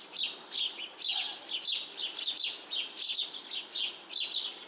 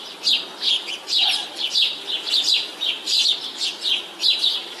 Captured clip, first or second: first